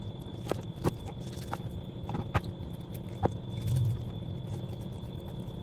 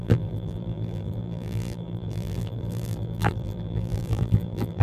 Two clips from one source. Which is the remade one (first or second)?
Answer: second